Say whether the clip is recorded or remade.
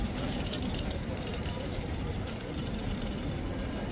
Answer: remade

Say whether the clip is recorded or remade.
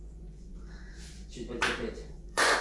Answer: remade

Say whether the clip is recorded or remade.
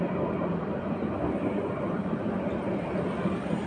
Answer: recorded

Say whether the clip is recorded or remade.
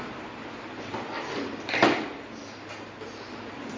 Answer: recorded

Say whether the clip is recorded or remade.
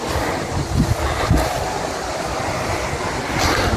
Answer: recorded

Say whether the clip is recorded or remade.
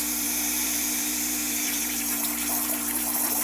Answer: remade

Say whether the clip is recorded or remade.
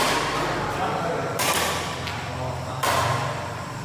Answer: recorded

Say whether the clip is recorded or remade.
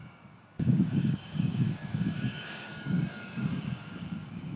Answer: remade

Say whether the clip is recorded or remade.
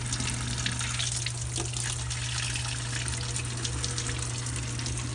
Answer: recorded